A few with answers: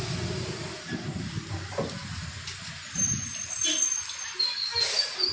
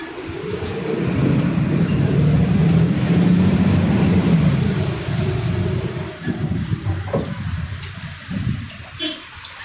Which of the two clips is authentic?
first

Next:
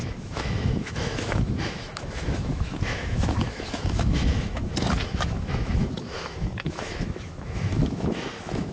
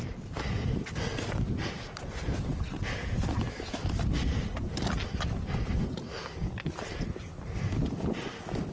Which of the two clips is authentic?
second